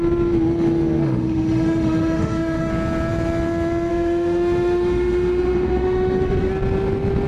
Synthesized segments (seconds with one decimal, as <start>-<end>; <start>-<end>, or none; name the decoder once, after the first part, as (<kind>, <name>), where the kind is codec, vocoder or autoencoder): 1.0-2.7 (autoencoder, DAC-VAE); 3.9-6.5

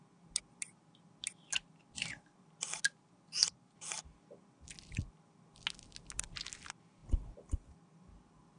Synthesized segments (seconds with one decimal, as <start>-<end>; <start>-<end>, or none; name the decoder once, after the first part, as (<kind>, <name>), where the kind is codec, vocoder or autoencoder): none

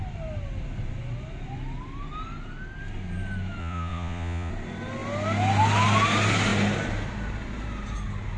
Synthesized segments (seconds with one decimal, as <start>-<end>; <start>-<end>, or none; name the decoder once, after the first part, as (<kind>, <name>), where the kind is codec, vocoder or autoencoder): 3.6-4.5 (vocoder, Vocos)

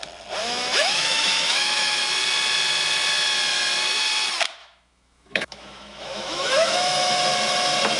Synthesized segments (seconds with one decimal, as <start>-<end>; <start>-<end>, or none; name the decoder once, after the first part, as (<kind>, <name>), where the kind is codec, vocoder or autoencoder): 0.4-2.0 (autoencoder, DAC-VAE); 4.6-7.2

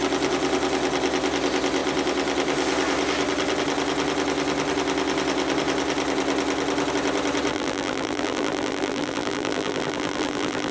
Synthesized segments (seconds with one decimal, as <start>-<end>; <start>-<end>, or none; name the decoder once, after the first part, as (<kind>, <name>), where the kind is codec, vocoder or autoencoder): 7.5-10.7 (vocoder, BigVGAN v2)

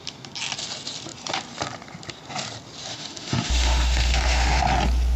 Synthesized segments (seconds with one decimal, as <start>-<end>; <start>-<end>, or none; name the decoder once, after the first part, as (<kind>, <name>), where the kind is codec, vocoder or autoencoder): 2.9-4.6 (autoencoder, DAC-VAE)

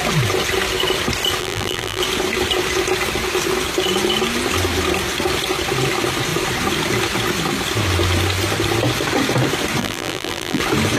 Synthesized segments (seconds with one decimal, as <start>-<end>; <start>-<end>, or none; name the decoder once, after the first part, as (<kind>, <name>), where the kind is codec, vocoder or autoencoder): 1.4-2.0 (vocoder, BigVGAN v2); 9.8-10.6